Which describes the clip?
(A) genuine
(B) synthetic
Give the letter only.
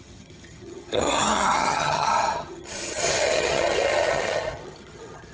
B